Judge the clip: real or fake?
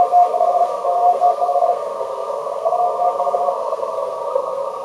fake